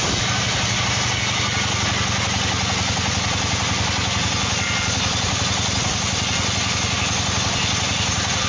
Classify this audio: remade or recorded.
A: recorded